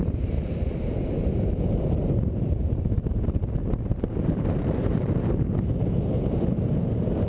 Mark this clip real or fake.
fake